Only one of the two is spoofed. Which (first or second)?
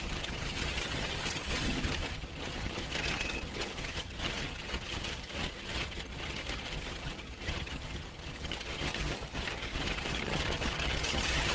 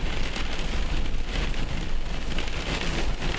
first